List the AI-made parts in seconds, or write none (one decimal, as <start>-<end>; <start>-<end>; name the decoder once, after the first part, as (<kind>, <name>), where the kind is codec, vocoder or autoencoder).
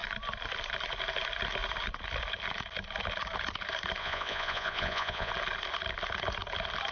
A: 4.0-5.3 (vocoder, Vocos)